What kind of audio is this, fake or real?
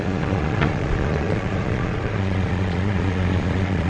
fake